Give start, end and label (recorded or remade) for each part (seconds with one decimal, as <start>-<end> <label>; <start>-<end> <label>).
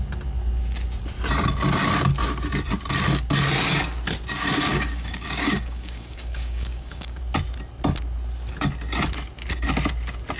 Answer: 0.0-4.7 recorded; 4.7-7.2 remade; 7.2-10.4 recorded